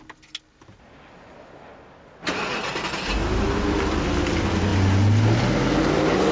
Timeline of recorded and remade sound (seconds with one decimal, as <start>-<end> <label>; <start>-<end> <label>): 0.0-6.3 recorded